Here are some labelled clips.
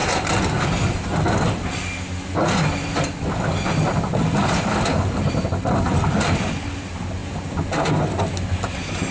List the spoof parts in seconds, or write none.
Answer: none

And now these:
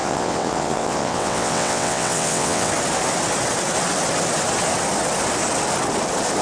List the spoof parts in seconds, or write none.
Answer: 0.0-2.7 (vocoder, WaveNeXt)